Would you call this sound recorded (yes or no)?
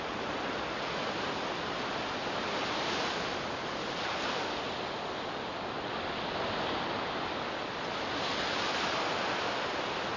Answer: yes